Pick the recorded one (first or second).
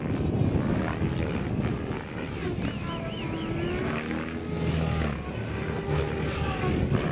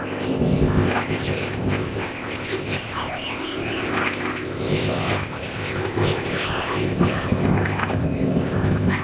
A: first